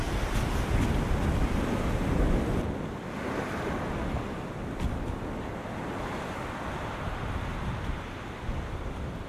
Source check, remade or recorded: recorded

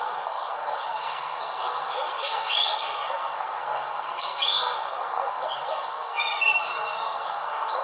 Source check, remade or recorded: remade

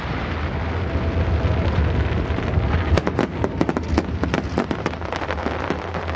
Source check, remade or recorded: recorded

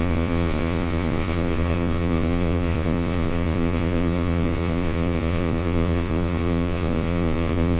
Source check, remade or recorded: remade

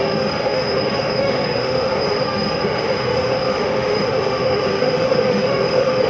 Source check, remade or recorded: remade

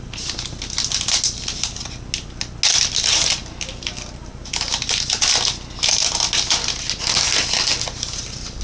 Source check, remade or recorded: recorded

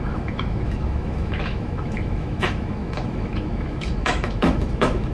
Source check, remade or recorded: remade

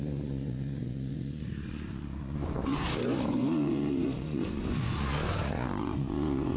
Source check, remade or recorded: remade